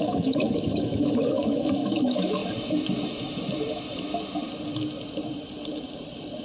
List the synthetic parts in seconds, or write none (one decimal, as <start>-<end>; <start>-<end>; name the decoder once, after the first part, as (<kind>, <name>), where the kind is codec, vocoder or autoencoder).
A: 0.0-2.4 (autoencoder, DAC-VAE)